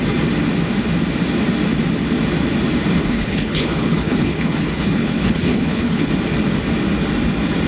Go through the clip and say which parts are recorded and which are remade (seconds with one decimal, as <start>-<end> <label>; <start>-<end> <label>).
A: 0.0-2.9 recorded; 2.9-6.1 remade; 6.1-7.7 recorded